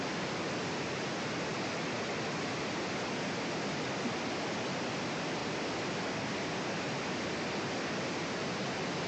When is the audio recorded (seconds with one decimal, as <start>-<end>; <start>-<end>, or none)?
0.0-9.1